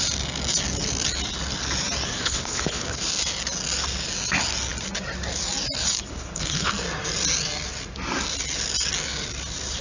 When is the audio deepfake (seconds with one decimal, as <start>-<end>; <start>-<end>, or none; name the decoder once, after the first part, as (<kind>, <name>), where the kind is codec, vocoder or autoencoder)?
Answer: 2.2-3.0 (codec, HILCodec); 6.1-6.7